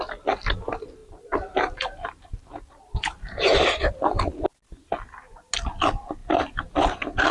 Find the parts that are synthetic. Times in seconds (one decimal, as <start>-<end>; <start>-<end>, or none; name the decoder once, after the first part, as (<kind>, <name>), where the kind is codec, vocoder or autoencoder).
1.0-4.2 (vocoder, BigVGAN v2); 6.2-7.3